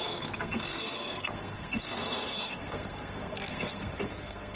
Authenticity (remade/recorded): remade